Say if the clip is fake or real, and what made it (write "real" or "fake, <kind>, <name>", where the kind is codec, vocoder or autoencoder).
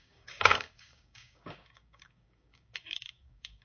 fake, codec, DAC